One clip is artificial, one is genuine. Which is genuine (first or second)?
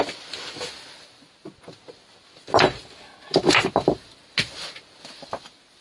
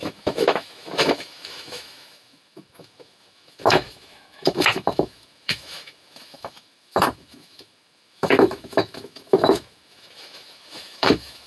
first